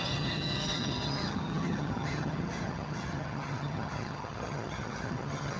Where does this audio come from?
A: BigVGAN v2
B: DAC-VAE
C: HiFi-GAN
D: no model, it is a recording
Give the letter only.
C